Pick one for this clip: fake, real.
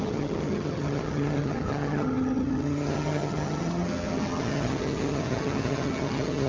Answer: fake